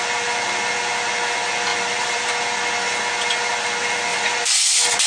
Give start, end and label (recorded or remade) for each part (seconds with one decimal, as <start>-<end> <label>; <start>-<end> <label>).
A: 0.0-1.7 recorded; 1.7-2.3 remade; 2.3-4.1 recorded; 4.1-5.1 remade